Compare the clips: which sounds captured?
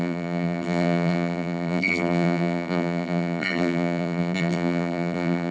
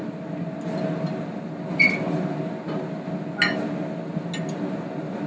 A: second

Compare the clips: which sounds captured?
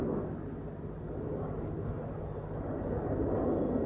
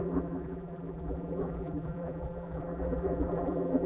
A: first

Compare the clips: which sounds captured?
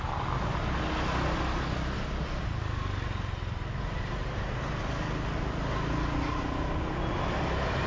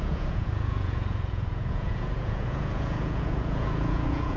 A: first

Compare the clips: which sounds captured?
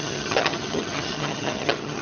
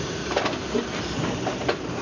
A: second